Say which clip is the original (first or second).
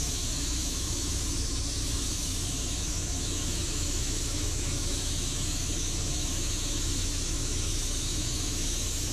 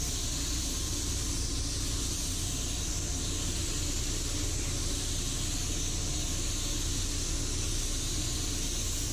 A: second